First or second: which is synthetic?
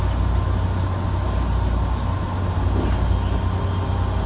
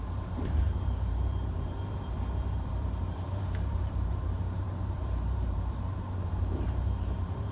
second